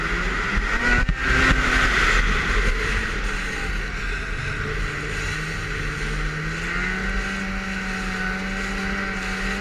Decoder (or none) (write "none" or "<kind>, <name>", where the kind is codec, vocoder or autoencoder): none